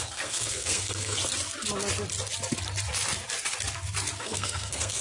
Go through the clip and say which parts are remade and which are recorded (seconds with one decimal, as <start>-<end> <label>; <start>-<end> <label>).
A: 0.0-1.2 remade; 1.2-4.2 recorded; 4.2-5.0 remade